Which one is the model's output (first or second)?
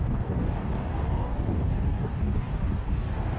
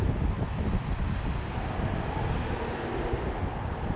first